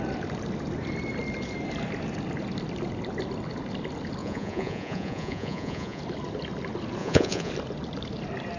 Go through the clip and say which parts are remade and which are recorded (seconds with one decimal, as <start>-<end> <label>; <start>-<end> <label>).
0.0-4.2 recorded; 4.2-6.0 remade; 6.0-7.0 recorded; 7.0-7.5 remade; 7.5-8.6 recorded